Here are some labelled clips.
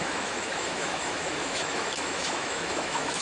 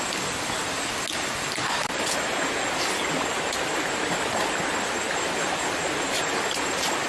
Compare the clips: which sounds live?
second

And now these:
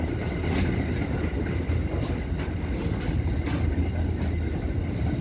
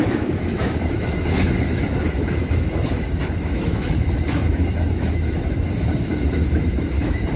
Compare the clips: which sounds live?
first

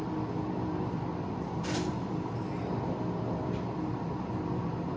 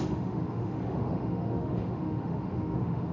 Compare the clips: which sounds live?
first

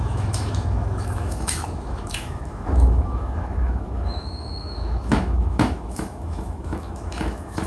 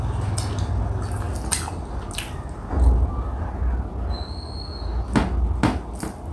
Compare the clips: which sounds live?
second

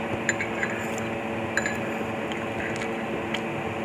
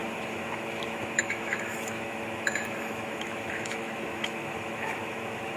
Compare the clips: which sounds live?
first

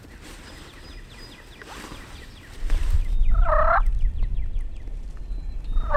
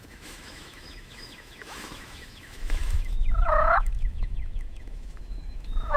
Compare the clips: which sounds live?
first